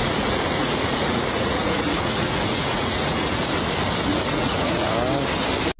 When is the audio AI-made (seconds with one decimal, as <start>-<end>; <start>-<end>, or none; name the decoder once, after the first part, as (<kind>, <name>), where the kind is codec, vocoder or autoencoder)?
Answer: 0.0-3.5 (vocoder, Vocos); 4.1-4.9